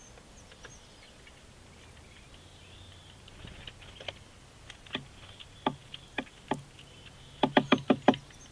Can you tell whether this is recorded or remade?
recorded